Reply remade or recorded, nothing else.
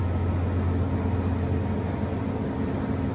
recorded